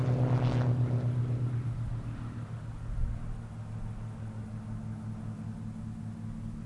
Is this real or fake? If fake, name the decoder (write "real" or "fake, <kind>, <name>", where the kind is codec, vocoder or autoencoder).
real